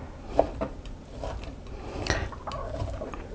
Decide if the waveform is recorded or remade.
recorded